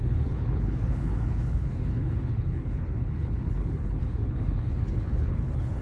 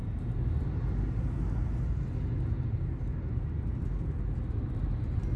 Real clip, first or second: second